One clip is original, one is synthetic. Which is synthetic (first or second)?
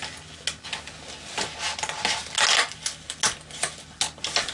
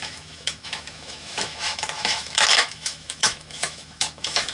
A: second